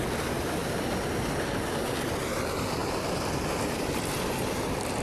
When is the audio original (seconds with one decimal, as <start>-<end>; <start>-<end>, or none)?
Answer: 0.0-5.0